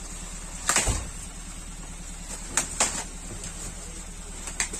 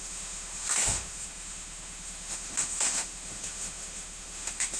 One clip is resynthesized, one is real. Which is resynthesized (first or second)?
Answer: second